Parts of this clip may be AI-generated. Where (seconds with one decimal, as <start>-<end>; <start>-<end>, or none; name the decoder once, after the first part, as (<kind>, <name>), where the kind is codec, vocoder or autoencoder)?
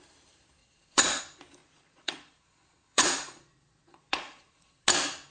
0.6-1.2 (vocoder, Vocos); 1.6-4.8